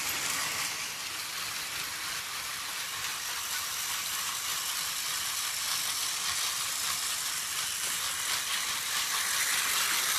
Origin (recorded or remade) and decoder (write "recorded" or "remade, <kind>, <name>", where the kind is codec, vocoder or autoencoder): recorded